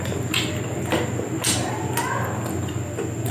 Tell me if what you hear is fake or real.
real